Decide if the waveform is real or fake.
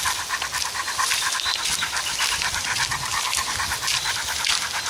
real